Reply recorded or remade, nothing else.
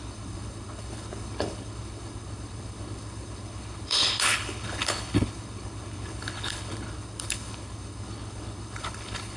remade